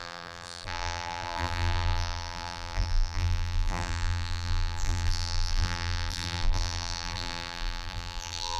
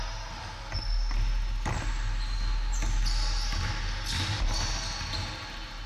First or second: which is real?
second